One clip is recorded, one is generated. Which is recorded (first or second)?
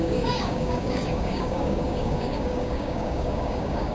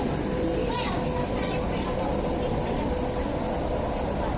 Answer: second